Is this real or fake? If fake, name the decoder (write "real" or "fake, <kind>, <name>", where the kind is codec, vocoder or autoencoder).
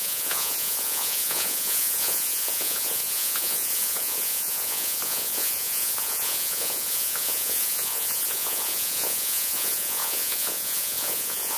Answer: fake, vocoder, Vocos